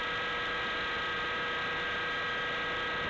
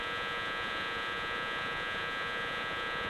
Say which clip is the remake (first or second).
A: second